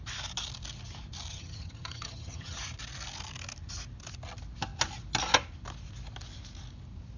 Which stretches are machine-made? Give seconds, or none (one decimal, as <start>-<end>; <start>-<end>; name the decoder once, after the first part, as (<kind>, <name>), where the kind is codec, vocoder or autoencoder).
1.3-2.6 (vocoder, HiFi-GAN)